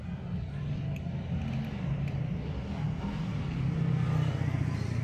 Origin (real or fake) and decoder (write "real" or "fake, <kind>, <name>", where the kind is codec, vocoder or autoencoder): real